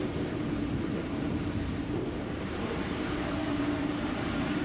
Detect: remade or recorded remade